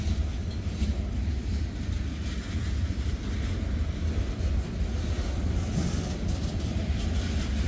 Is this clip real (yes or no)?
yes